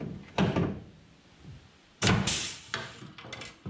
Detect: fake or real real